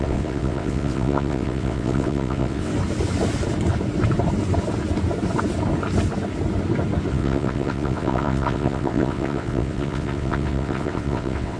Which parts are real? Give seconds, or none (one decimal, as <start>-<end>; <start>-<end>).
2.7-7.1